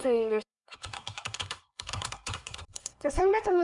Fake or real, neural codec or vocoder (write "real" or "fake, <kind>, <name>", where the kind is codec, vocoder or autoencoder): fake, codec, SNAC